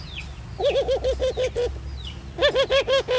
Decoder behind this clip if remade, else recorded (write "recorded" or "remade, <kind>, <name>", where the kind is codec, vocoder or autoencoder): recorded